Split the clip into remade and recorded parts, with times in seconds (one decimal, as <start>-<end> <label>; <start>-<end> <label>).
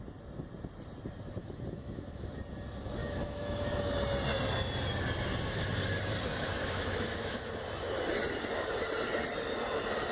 0.0-1.4 recorded; 1.4-2.3 remade; 2.3-3.0 recorded; 3.0-3.9 remade; 3.9-6.5 recorded; 6.5-7.5 remade; 7.5-10.1 recorded